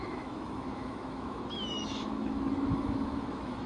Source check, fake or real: fake